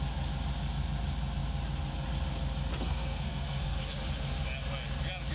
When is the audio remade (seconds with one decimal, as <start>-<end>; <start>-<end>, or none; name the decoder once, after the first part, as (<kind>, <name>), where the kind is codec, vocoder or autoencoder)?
2.7-3.8 (codec, SNAC)